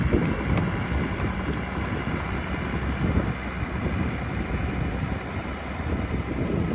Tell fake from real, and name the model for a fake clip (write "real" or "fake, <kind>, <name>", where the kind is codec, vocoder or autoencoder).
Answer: real